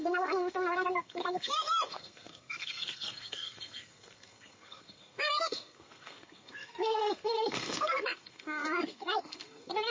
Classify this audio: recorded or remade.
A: remade